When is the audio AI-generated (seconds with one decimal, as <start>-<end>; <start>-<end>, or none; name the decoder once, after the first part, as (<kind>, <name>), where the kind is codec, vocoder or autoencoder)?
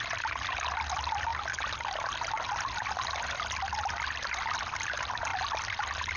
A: none